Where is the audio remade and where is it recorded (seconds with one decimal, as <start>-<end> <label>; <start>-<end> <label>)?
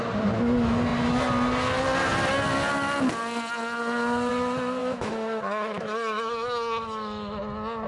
0.0-4.8 recorded; 4.8-7.4 remade; 7.4-7.9 recorded